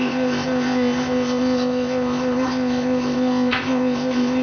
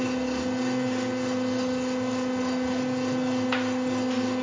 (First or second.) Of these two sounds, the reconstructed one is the first